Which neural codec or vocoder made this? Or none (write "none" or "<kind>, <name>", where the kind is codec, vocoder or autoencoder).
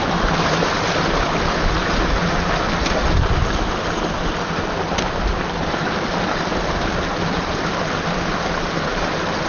none